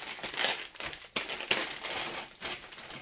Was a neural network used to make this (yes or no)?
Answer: no